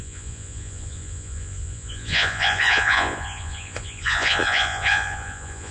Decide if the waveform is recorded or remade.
remade